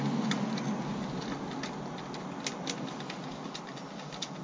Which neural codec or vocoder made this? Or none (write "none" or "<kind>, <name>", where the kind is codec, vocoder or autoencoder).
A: none